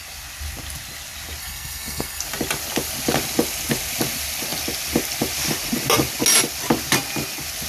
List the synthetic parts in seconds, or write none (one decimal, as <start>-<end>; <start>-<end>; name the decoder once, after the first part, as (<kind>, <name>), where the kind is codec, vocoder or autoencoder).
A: 1.4-2.2 (codec, SNAC)